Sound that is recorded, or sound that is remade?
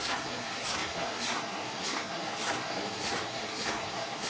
remade